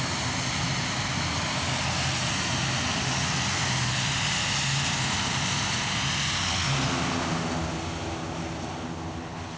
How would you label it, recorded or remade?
recorded